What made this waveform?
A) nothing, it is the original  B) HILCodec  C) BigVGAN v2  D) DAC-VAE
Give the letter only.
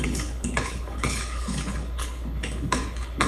B